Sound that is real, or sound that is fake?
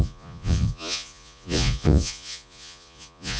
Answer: fake